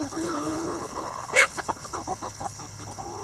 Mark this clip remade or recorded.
remade